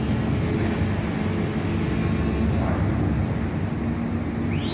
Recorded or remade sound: recorded